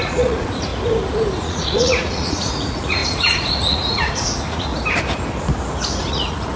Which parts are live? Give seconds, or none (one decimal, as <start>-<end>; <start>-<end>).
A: 0.7-1.4; 4.7-6.1